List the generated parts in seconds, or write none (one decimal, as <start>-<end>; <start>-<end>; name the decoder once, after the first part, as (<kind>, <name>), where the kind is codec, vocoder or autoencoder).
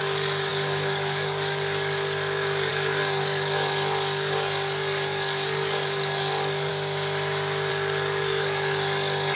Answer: 0.0-6.7 (codec, DAC); 7.7-9.4